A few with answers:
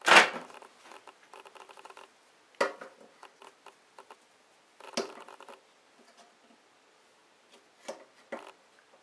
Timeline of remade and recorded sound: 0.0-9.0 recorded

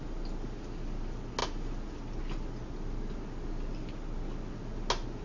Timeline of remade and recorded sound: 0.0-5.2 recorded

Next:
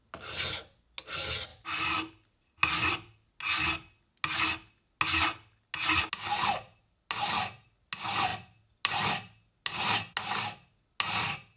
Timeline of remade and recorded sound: 0.0-11.6 recorded

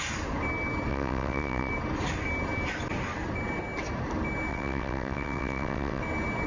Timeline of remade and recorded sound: 0.0-0.9 recorded; 0.9-1.7 remade; 1.7-4.5 recorded; 4.5-6.0 remade; 6.0-6.5 recorded

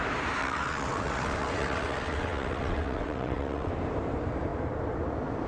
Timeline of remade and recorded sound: 0.0-0.4 recorded; 0.4-3.7 remade; 3.7-5.5 recorded

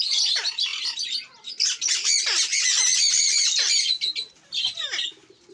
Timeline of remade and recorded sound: 0.0-5.5 recorded